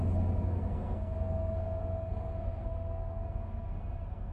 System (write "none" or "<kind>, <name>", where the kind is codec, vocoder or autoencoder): codec, SNAC